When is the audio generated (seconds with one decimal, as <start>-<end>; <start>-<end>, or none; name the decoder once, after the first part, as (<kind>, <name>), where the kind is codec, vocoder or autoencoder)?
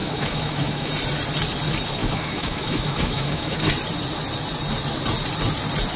0.0-0.9 (autoencoder, DAC-VAE); 2.0-3.7